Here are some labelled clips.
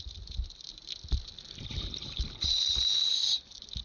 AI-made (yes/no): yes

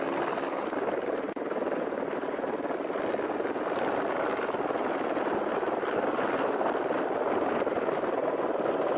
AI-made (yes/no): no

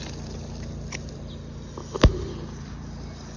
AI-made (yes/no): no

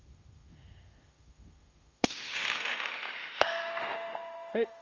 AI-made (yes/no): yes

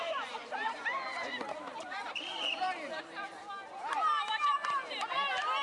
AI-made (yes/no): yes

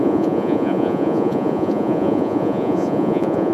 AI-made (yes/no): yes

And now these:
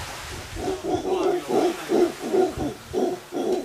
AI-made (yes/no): no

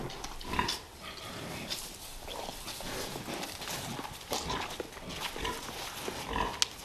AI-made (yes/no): no